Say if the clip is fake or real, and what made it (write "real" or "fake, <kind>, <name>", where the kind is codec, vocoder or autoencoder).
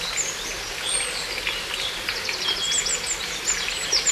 real